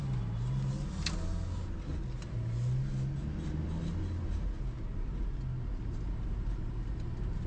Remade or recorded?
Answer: recorded